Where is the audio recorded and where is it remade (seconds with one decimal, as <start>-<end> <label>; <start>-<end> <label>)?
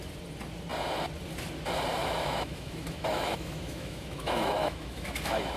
0.0-2.0 recorded; 2.0-5.6 remade